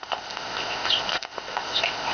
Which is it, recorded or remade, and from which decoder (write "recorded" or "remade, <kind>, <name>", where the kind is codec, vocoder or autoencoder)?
remade, codec, ZipCodec